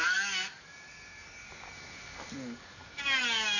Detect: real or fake fake